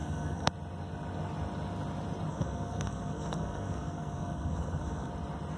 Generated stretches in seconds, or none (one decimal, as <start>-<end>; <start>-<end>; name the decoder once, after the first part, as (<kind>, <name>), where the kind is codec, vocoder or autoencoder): 0.0-0.5 (codec, SNAC); 2.3-5.1

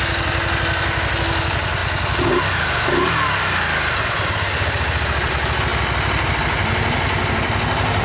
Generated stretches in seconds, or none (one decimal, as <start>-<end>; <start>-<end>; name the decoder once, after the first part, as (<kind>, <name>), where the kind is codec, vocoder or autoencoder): none